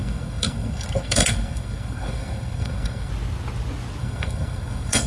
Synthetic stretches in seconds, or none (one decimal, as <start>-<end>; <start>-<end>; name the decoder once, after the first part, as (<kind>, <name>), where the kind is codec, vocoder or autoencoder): 0.0-3.1 (codec, SNAC); 4.0-5.1